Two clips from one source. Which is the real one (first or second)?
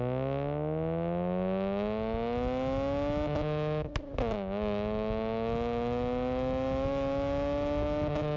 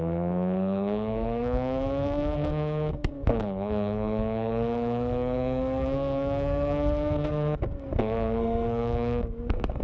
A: first